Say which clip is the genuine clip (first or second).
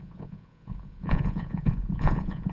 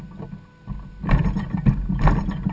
second